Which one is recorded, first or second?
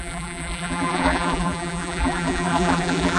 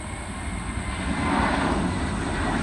second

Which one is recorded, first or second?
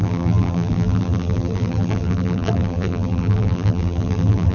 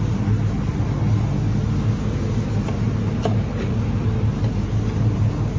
second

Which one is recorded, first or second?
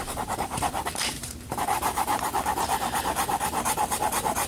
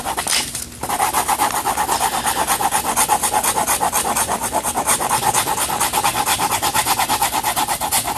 second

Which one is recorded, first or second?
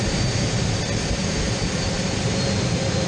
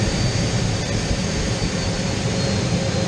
second